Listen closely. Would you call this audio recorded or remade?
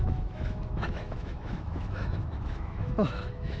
remade